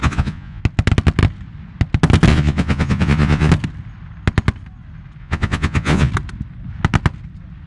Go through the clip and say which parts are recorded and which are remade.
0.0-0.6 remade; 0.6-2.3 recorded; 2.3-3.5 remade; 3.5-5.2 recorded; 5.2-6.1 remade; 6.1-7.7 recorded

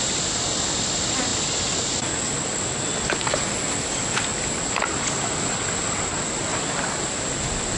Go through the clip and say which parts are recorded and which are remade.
0.0-7.8 recorded

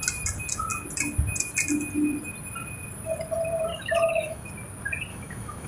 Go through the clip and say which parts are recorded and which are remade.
0.0-3.7 recorded; 3.7-4.5 remade; 4.5-5.1 recorded; 5.1-5.7 remade

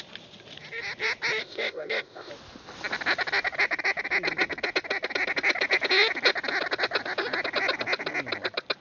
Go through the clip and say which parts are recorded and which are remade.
0.0-1.4 recorded; 1.4-2.3 remade; 2.3-8.8 recorded

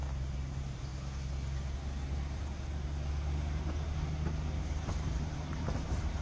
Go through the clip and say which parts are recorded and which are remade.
0.0-0.9 remade; 0.9-4.6 recorded; 4.6-6.2 remade